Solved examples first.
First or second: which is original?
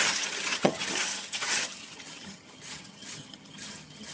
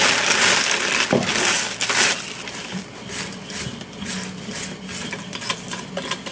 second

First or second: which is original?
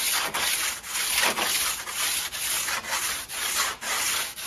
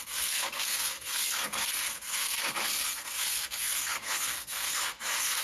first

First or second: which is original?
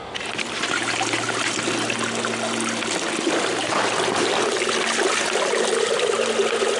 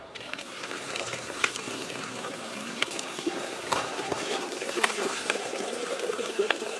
first